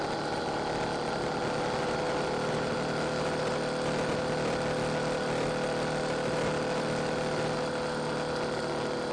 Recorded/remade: recorded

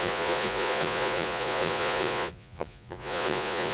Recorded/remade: remade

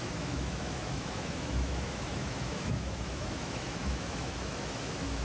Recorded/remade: remade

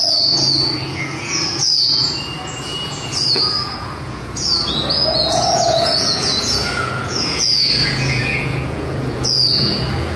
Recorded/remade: remade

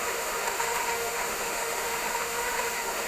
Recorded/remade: remade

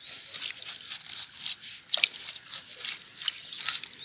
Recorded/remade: recorded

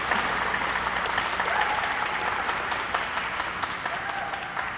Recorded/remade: recorded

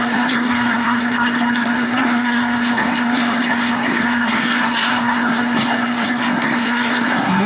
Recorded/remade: remade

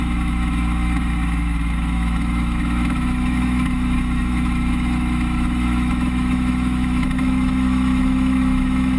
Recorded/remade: remade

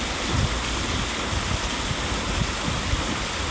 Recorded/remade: recorded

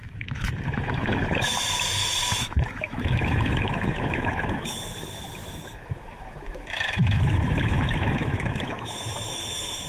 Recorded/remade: remade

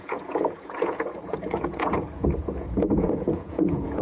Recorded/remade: remade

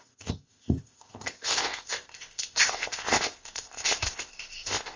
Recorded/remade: remade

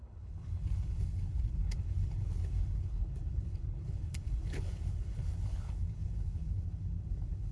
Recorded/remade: remade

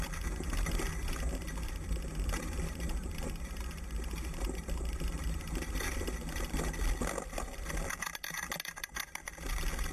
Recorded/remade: recorded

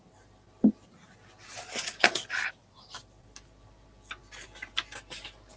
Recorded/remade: recorded